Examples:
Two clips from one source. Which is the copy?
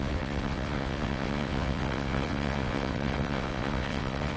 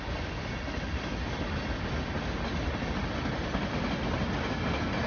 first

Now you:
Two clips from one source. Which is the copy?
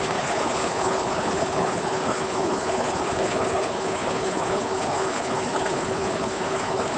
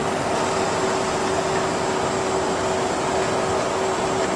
first